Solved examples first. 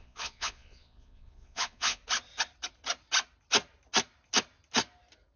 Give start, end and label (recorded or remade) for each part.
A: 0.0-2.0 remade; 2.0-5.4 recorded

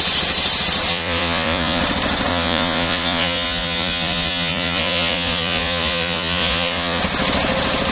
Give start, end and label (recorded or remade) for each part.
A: 0.0-0.9 recorded; 0.9-1.8 remade; 1.8-2.3 recorded; 2.3-7.0 remade; 7.0-7.9 recorded

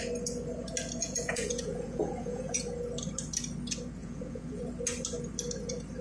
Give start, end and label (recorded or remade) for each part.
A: 0.0-1.0 recorded; 1.0-2.6 remade; 2.6-4.0 recorded; 4.0-4.6 remade; 4.6-6.0 recorded

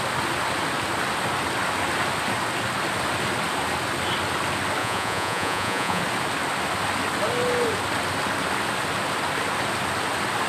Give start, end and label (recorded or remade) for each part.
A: 0.0-4.8 recorded; 4.8-6.0 remade; 6.0-10.5 recorded

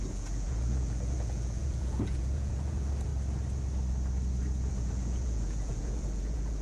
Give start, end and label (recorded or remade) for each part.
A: 0.0-3.1 remade; 3.1-4.7 recorded; 4.7-6.6 remade

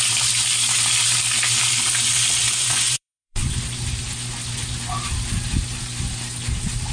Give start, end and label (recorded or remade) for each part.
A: 0.0-2.4 recorded; 2.4-3.6 remade; 3.6-6.9 recorded

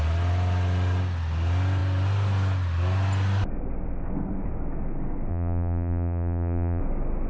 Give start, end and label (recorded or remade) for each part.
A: 0.0-5.3 recorded; 5.3-6.8 remade; 6.8-7.3 recorded